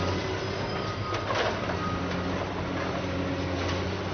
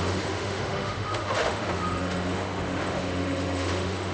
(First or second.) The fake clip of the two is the second